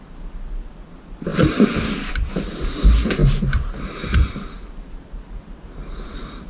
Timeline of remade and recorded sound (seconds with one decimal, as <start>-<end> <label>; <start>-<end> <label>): 0.0-6.5 recorded